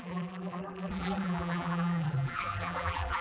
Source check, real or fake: fake